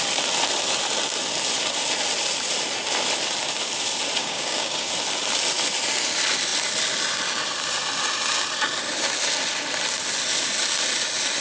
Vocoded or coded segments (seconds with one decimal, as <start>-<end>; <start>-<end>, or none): 4.2-4.9